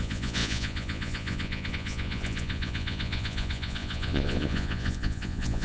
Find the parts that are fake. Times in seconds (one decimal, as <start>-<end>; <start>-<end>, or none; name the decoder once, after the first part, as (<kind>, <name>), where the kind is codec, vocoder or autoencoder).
0.0-5.6 (vocoder, Vocos)